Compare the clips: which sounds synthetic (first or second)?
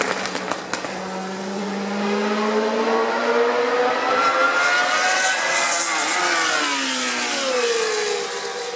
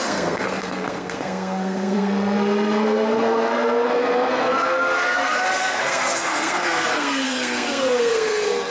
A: second